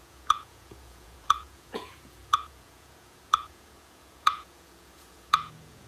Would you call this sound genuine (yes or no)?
no